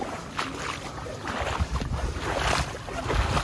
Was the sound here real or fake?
real